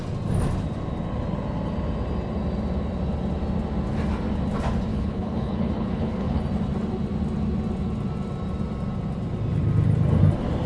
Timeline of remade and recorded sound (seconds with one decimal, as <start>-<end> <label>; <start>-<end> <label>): 0.0-4.9 recorded; 4.9-6.4 remade; 6.4-10.7 recorded